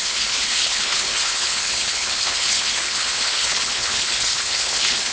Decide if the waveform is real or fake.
fake